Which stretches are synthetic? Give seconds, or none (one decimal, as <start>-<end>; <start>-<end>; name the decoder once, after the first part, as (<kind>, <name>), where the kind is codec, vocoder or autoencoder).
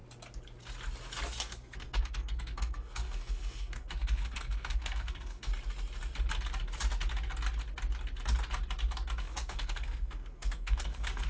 1.4-5.5 (codec, SNAC); 9.2-11.3